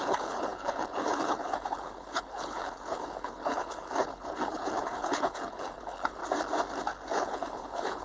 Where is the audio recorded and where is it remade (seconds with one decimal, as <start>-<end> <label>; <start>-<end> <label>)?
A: 0.0-6.2 remade; 6.2-7.1 recorded; 7.1-8.0 remade